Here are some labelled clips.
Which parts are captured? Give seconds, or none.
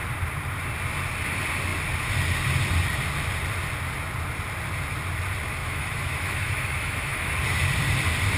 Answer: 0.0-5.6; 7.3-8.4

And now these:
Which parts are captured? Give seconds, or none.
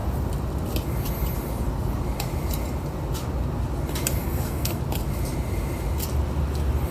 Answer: 0.0-4.2; 4.8-6.9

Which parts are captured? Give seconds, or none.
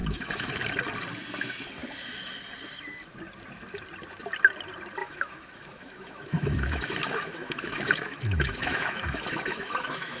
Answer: 0.5-5.0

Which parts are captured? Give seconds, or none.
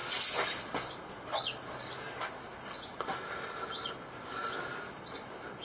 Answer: 0.0-5.6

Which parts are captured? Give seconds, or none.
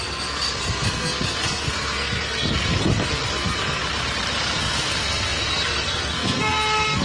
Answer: 3.8-4.6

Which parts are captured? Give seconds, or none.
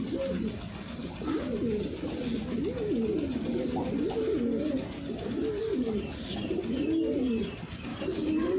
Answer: 0.0-1.0; 5.3-7.9